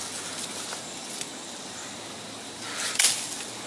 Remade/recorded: recorded